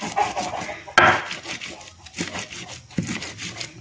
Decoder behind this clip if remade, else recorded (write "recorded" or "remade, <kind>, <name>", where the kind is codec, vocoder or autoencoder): recorded